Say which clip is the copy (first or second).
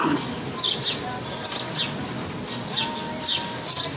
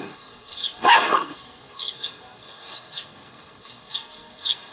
second